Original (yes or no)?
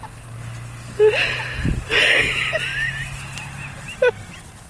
yes